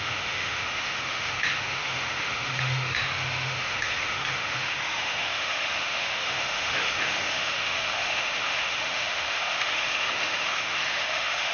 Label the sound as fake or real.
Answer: fake